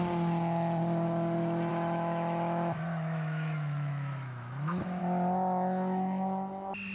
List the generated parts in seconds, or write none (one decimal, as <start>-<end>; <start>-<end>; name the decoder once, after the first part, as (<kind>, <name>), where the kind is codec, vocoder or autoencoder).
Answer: 1.7-5.0 (autoencoder, DAC-VAE)